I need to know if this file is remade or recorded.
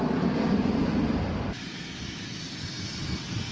recorded